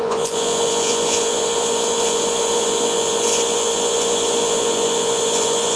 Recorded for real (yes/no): no